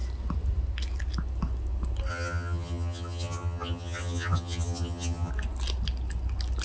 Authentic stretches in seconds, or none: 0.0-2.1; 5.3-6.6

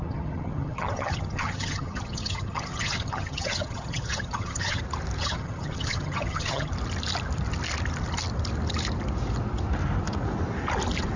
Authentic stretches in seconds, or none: 4.8-5.2; 6.7-11.2

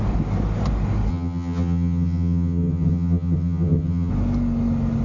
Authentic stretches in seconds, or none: 0.0-1.1; 4.1-5.0

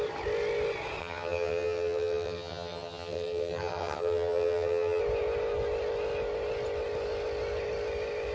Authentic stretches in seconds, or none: 0.0-1.0; 5.0-8.3

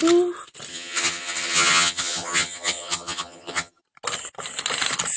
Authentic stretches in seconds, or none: 0.0-0.7; 3.8-5.2